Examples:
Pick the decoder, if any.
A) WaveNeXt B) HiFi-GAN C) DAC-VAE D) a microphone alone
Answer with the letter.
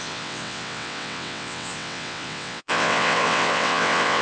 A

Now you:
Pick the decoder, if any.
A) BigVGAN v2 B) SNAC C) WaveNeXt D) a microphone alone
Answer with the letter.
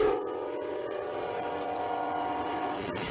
C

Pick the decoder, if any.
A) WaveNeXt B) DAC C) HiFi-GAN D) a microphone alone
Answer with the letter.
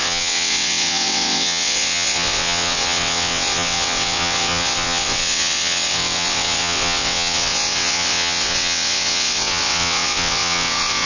A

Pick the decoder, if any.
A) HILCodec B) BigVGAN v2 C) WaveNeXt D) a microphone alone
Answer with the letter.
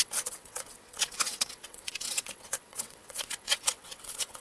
C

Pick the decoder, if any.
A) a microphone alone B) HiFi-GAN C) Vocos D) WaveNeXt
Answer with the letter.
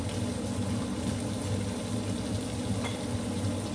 A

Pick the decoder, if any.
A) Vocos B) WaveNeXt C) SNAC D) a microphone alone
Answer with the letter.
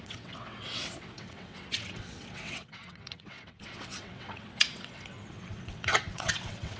B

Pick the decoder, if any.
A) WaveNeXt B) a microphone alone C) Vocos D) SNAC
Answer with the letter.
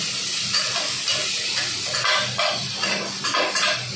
B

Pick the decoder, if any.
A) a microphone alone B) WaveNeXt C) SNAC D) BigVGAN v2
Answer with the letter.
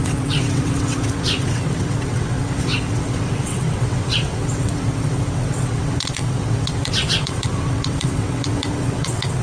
B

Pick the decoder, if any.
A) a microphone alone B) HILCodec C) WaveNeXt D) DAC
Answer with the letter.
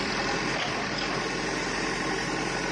A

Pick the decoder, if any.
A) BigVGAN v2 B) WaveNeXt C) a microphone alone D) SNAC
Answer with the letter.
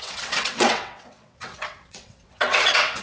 B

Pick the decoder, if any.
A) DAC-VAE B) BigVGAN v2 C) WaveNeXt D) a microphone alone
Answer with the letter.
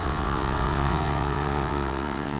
C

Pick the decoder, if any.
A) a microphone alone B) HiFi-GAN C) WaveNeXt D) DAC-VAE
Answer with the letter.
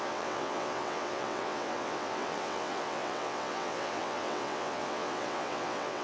C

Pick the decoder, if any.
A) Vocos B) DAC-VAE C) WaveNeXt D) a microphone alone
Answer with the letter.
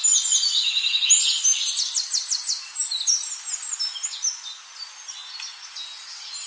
D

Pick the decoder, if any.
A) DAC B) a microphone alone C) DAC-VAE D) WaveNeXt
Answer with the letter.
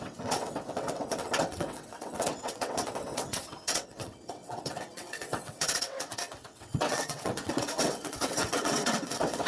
D